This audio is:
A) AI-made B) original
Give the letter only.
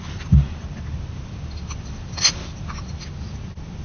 B